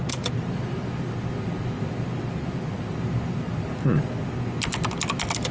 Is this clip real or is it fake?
real